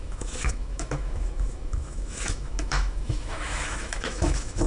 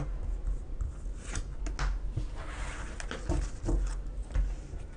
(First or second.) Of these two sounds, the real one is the second